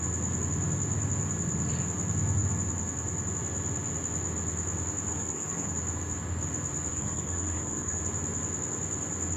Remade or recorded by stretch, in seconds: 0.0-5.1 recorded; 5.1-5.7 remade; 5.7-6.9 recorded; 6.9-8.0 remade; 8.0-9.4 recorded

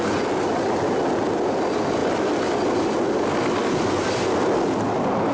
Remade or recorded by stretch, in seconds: 0.0-5.3 recorded

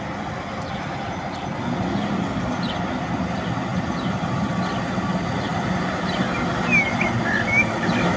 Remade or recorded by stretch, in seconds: 0.0-8.2 recorded

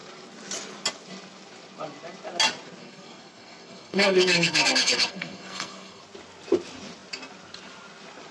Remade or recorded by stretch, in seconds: 0.0-2.8 recorded; 2.8-6.0 remade; 6.0-8.3 recorded

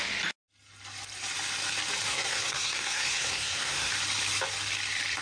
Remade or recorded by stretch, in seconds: 0.0-2.1 recorded; 2.1-3.9 remade; 3.9-5.2 recorded

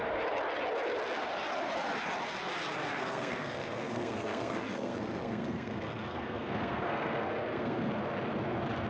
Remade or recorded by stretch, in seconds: 0.0-2.9 recorded; 2.9-7.9 remade; 7.9-8.9 recorded